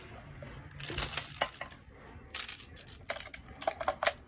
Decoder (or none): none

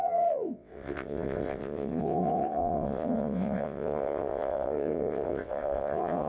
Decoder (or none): vocoder, WaveNeXt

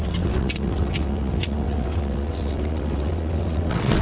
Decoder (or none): vocoder, WaveNeXt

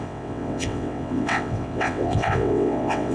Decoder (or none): vocoder, WaveNeXt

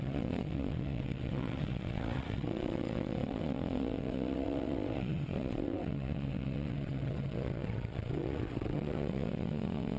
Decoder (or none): vocoder, WaveNeXt